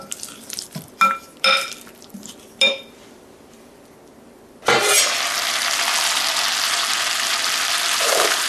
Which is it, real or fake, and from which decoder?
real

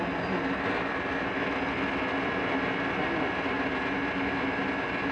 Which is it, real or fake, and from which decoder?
real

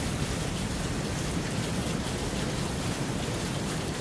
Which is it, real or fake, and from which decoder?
real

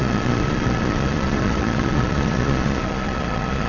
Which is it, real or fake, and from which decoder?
fake, vocoder, Vocos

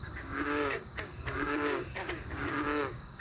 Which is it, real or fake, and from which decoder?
fake, codec, DAC